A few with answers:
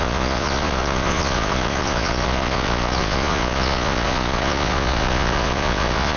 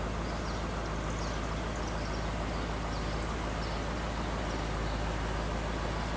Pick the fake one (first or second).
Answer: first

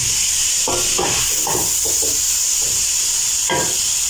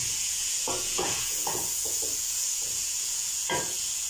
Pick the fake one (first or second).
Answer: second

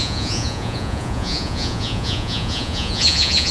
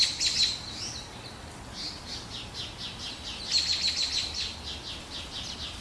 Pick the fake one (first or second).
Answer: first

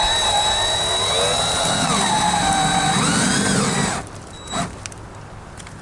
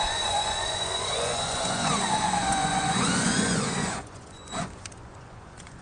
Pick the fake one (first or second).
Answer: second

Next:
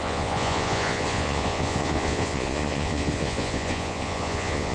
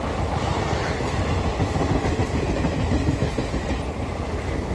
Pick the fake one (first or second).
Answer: first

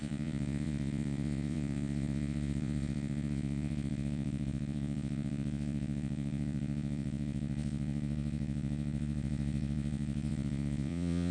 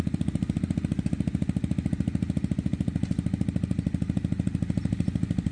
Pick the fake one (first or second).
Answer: first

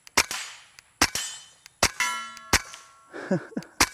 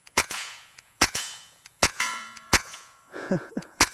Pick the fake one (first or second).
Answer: second